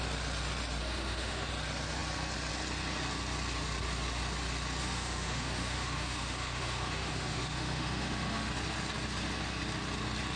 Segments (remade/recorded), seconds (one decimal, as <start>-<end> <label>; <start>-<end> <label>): 0.0-0.8 recorded; 0.8-1.5 remade; 1.5-4.8 recorded; 4.8-8.5 remade; 8.5-10.4 recorded